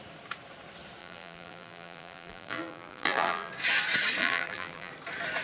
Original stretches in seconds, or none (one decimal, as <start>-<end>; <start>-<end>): 0.0-1.0; 3.5-4.2; 4.9-5.4